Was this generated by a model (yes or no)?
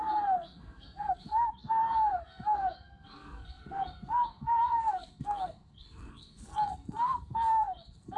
yes